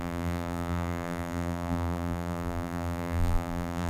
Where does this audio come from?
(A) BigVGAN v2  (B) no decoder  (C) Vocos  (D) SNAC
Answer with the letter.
A